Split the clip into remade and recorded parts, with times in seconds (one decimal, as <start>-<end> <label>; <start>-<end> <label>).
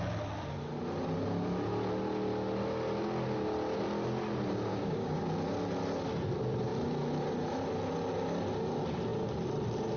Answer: 0.0-4.7 recorded; 4.7-5.2 remade; 5.2-10.0 recorded